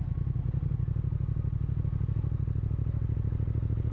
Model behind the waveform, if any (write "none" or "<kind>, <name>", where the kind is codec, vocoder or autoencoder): none